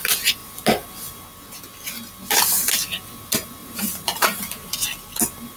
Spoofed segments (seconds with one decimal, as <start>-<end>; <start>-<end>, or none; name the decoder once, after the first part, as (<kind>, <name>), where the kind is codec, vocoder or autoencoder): 3.6-4.4 (vocoder, BigVGAN v2)